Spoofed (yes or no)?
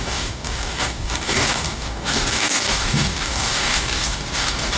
yes